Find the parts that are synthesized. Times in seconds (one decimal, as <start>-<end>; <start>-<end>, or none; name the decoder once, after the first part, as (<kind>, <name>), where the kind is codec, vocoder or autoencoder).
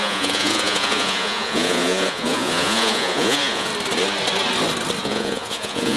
0.0-3.7 (vocoder, Vocos); 5.0-6.0